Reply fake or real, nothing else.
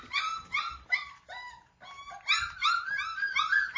real